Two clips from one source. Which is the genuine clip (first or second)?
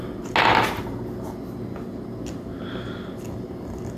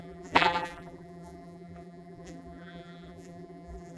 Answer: first